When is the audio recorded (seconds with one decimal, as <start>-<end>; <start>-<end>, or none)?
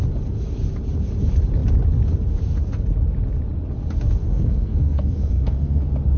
0.0-4.2; 5.8-6.2